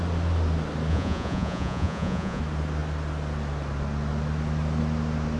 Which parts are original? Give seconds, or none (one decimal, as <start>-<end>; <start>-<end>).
0.0-0.9; 2.4-5.4